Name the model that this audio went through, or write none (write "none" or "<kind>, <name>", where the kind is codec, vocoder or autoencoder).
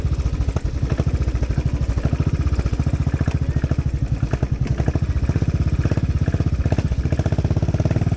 none